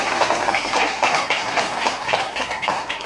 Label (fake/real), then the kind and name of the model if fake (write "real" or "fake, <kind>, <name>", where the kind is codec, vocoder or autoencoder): fake, codec, SNAC